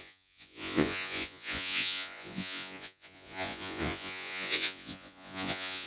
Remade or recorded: remade